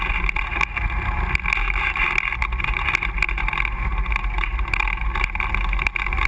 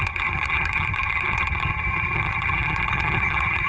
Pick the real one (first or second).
first